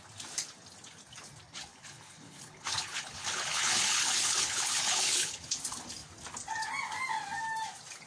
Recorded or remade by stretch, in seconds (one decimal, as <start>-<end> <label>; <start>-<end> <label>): 0.0-1.7 recorded; 1.7-5.5 remade; 5.5-8.1 recorded